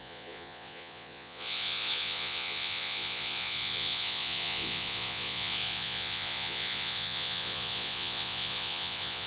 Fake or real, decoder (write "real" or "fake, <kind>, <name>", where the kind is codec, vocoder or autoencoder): fake, vocoder, Vocos